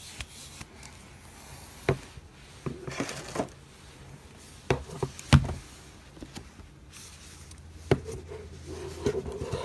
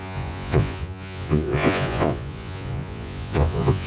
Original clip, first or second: first